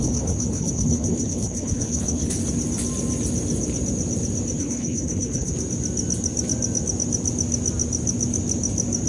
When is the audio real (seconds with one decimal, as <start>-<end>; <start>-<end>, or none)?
2.4-4.6; 5.5-9.1